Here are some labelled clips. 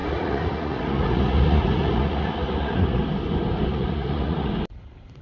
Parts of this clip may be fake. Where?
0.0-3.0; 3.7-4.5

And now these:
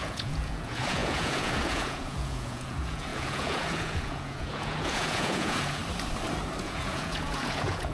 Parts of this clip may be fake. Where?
0.0-5.8; 6.6-7.9

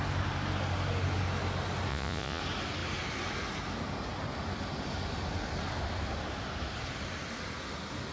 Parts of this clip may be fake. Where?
1.9-2.4

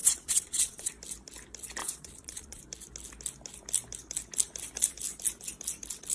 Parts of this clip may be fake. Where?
0.0-0.9; 1.8-2.6